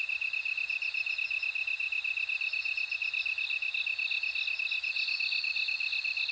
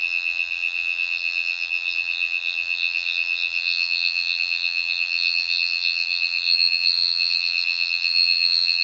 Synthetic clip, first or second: second